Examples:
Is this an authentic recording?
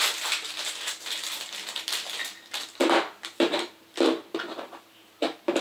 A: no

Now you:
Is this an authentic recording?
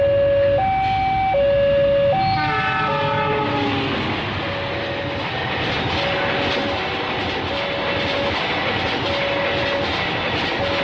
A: yes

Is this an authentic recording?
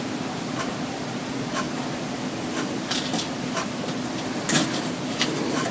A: yes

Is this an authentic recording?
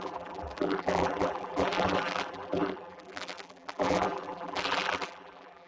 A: no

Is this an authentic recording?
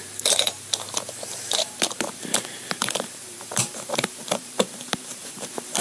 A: no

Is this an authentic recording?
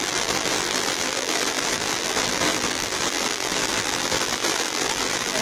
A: no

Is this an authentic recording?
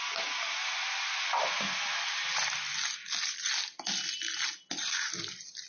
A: yes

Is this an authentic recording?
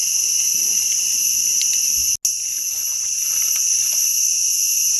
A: yes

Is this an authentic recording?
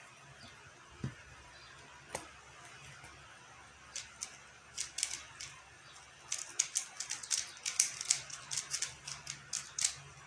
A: yes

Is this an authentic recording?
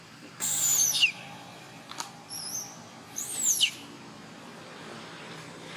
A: no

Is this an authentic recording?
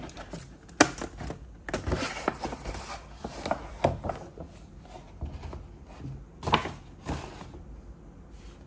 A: yes